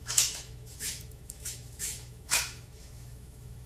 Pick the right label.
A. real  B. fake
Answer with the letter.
B